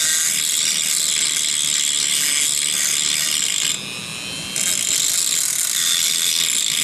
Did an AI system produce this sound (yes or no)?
no